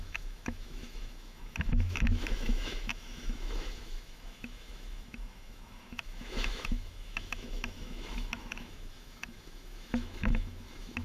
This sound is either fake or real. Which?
fake